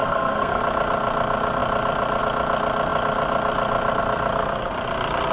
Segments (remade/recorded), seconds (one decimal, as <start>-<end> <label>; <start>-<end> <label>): 0.0-0.6 remade; 0.6-5.3 recorded